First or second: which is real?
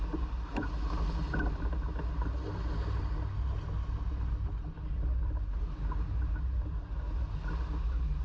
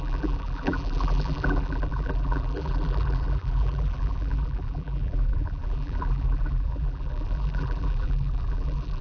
first